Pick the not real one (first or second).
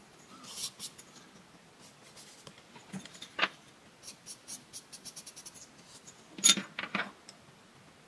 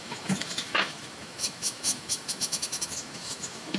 second